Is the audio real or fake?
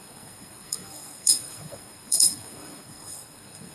fake